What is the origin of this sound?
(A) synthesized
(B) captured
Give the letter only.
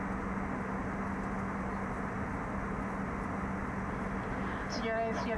B